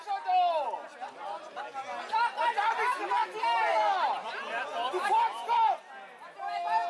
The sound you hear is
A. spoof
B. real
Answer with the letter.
B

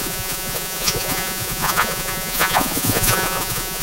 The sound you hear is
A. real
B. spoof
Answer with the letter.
B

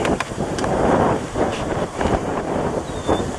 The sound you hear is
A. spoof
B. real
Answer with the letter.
A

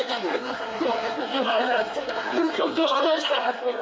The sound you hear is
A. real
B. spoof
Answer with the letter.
B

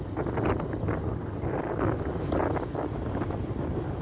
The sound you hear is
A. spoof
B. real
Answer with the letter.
B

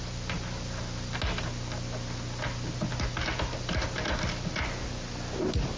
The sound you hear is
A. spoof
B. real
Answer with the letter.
B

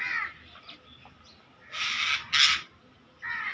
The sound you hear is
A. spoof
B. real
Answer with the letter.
B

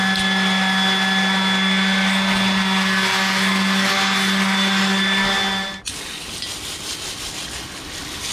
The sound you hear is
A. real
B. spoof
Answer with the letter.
A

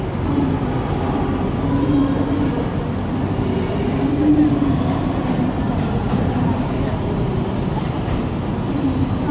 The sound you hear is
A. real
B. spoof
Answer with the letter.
A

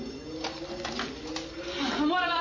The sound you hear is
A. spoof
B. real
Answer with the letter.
B